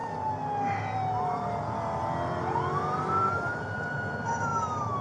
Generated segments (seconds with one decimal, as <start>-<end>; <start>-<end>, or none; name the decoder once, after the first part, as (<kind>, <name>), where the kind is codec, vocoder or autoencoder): 3.0-4.5 (vocoder, BigVGAN v2)